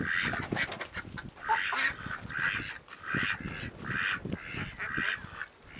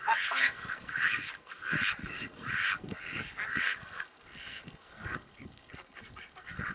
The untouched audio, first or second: first